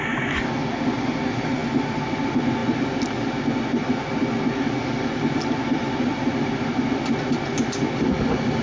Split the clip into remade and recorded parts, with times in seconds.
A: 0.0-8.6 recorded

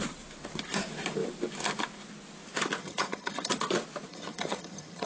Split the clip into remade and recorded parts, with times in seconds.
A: 0.0-2.8 recorded; 2.8-3.5 remade; 3.5-4.1 recorded; 4.1-5.1 remade

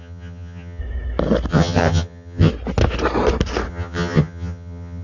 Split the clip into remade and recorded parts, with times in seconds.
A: 0.0-0.8 remade; 0.8-1.5 recorded; 1.5-2.5 remade; 2.5-3.7 recorded; 3.7-5.0 remade

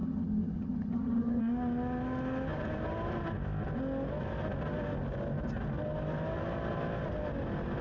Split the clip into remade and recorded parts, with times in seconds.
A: 0.0-1.4 remade; 1.4-7.8 recorded

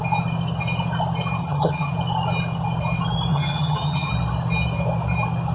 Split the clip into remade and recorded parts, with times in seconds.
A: 0.0-1.4 recorded; 1.4-1.9 remade; 1.9-3.3 recorded; 3.3-4.1 remade; 4.1-5.5 recorded

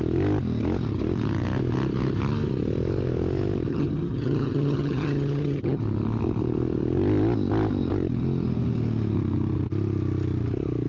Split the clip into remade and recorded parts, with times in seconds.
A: 0.0-3.7 recorded; 3.7-5.8 remade; 5.8-10.9 recorded

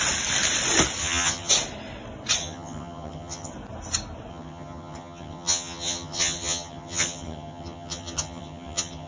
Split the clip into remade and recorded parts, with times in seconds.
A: 0.0-1.0 recorded; 1.0-1.5 remade; 1.5-2.4 recorded; 2.4-3.5 remade; 3.5-4.3 recorded; 4.3-9.1 remade

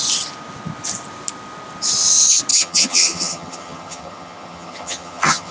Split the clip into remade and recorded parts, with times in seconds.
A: 0.0-2.5 recorded; 2.5-5.5 remade